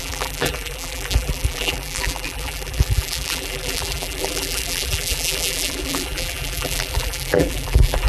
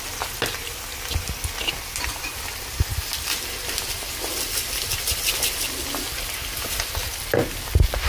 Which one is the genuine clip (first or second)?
second